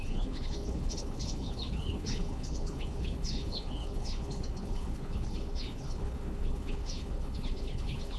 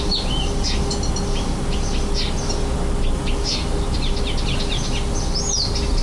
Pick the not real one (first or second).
first